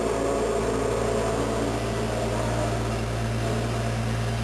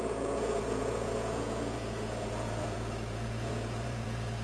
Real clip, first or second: first